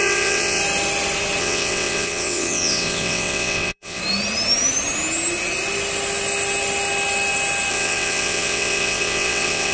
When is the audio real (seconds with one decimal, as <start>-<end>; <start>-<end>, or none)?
0.6-1.4; 4.0-7.7